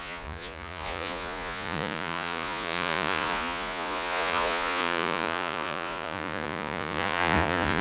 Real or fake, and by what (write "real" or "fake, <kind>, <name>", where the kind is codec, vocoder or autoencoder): fake, vocoder, Vocos